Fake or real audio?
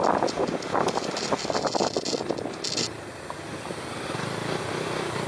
real